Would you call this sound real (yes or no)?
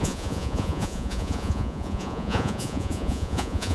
no